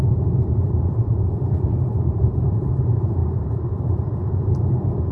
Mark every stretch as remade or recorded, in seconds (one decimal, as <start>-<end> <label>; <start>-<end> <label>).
0.0-5.1 remade